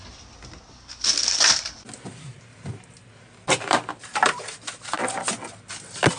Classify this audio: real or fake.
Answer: real